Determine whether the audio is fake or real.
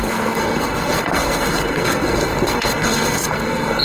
fake